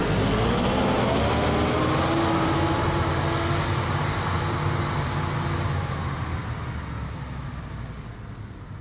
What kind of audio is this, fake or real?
real